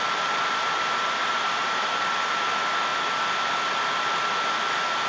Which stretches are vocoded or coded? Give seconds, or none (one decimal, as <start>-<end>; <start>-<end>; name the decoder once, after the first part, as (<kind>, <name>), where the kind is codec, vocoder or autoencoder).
1.2-1.9 (vocoder, BigVGAN v2)